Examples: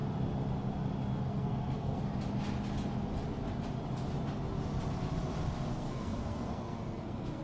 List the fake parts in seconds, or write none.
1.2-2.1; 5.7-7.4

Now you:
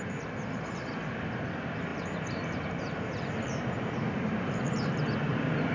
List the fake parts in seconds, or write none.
none